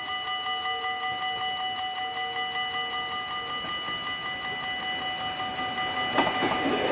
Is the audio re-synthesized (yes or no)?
no